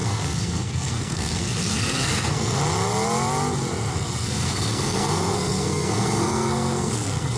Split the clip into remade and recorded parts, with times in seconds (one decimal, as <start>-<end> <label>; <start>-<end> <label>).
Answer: 0.0-2.6 remade; 2.6-3.9 recorded; 3.9-7.4 remade